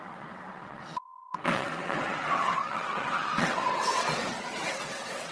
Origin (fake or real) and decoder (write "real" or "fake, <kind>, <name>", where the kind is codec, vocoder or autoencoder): fake, vocoder, WaveNeXt